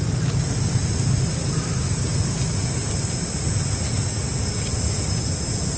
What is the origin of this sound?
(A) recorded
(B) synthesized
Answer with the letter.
A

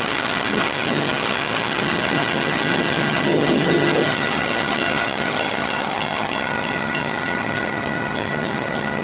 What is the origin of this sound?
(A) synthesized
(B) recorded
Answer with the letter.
A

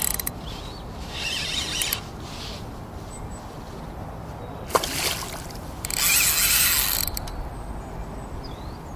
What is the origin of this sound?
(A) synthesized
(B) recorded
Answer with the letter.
B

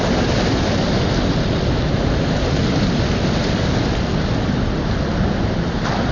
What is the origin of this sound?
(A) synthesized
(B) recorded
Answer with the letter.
B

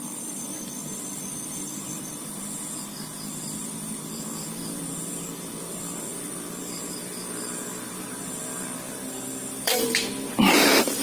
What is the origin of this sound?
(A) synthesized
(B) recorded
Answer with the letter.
A